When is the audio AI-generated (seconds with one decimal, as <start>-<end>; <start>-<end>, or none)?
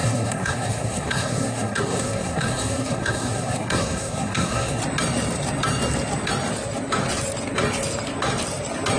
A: 0.0-4.8